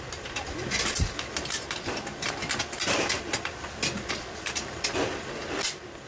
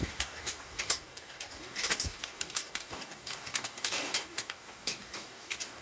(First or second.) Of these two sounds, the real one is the first